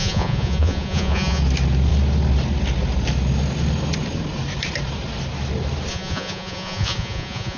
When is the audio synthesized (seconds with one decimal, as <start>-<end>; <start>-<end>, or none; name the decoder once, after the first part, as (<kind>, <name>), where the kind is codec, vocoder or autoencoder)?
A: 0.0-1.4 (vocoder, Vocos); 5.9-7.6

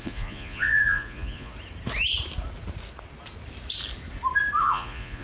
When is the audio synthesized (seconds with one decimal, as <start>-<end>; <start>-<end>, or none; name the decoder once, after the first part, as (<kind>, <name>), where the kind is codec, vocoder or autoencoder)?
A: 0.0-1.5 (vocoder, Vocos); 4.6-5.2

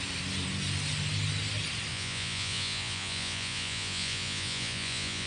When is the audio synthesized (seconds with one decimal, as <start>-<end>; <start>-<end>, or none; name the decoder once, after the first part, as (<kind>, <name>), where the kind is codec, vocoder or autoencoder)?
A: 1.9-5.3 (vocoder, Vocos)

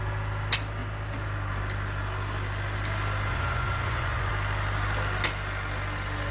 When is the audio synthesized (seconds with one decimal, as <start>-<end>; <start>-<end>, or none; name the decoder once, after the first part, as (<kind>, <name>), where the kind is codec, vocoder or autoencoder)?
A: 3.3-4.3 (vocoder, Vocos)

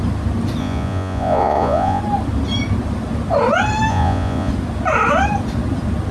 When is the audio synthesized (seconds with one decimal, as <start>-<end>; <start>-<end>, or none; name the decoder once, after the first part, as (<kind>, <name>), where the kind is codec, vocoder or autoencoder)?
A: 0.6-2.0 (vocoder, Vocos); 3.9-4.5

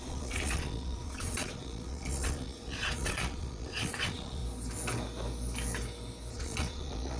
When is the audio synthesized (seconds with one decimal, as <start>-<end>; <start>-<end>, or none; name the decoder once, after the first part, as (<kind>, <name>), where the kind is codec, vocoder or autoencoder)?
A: 0.0-4.4 (vocoder, Vocos); 6.3-7.2

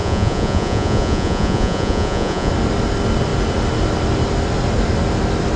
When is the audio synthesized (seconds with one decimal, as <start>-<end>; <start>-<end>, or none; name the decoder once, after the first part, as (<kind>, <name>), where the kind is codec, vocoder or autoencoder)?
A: 0.0-2.5 (vocoder, Vocos)

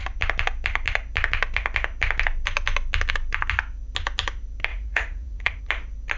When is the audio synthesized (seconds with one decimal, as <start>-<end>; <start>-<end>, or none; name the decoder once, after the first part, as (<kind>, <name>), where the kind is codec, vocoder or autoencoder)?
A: 4.7-5.6 (vocoder, Vocos)